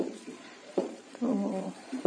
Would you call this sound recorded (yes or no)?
no